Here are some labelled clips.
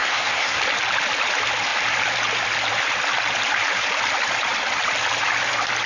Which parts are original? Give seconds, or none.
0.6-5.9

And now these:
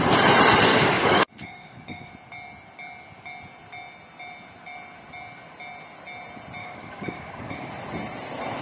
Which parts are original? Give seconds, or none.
0.0-0.7; 2.1-6.6; 7.7-8.6

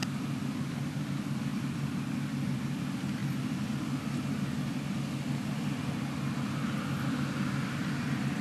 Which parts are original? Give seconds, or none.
0.0-8.4